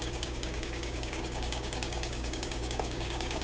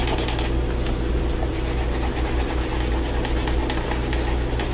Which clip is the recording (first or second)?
second